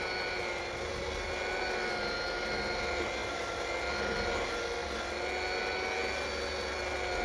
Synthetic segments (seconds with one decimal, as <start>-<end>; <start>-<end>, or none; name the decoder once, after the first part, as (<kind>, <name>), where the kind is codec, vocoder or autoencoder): none